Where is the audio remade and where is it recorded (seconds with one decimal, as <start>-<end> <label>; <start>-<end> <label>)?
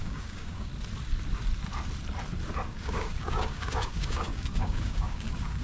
0.0-0.7 remade; 0.7-2.7 recorded; 2.7-5.6 remade